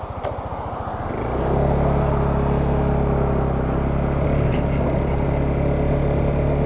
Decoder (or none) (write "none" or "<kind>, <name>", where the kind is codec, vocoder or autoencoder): none